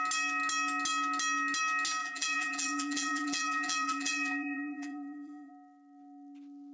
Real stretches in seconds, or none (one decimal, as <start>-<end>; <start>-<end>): 0.0-2.0; 5.5-6.7